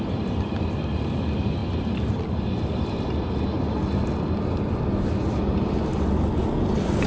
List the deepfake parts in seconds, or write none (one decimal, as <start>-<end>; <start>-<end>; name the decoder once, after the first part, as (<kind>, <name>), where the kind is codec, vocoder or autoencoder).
0.0-1.6 (vocoder, BigVGAN v2); 5.9-7.1